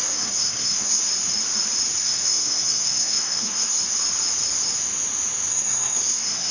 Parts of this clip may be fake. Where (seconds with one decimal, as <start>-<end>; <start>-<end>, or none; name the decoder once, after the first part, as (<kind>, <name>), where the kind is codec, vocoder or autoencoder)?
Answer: 0.0-1.0 (codec, SNAC); 2.0-3.8; 5.5-6.5